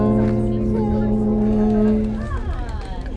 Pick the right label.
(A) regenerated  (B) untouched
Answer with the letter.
B